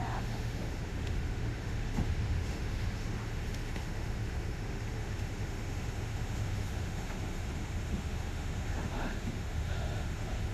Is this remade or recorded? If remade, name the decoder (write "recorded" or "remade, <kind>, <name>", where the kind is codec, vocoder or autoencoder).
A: remade, autoencoder, DAC-VAE